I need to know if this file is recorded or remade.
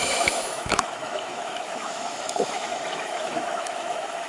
remade